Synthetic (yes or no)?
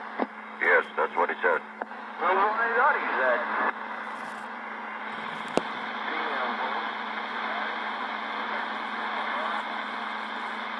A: no